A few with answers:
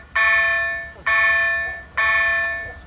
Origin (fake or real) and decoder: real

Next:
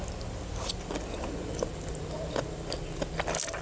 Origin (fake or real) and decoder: real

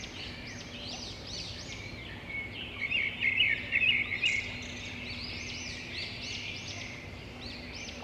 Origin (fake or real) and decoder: fake, vocoder, BigVGAN v2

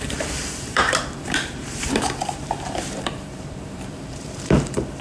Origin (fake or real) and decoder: fake, vocoder, BigVGAN v2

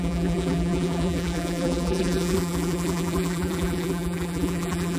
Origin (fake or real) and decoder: fake, vocoder, BigVGAN v2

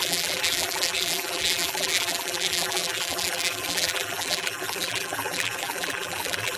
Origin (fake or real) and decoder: fake, vocoder, BigVGAN v2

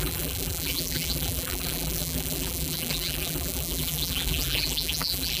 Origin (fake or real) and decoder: fake, vocoder, BigVGAN v2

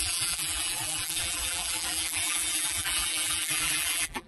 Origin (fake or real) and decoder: fake, vocoder, BigVGAN v2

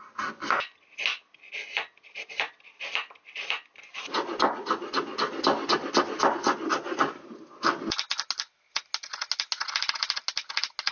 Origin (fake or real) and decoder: real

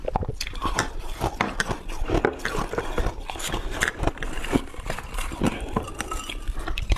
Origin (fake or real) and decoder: fake, vocoder, BigVGAN v2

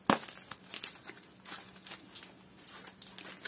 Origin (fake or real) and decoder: real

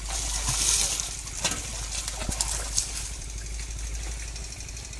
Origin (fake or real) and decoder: real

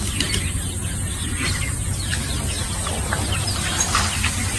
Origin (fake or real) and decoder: fake, vocoder, BigVGAN v2